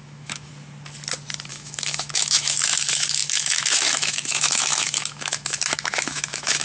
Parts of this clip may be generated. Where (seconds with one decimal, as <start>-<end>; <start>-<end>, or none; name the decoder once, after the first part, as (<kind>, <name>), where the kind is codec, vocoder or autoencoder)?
0.0-0.5 (autoencoder, DAC-VAE); 1.5-6.6